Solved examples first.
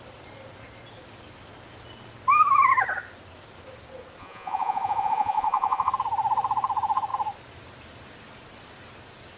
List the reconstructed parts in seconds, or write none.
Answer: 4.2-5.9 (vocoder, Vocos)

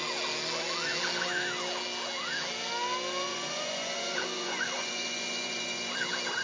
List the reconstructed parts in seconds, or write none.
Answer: 3.3-5.9 (vocoder, Vocos)